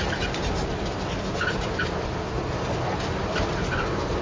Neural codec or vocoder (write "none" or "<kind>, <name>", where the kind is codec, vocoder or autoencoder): vocoder, BigVGAN v2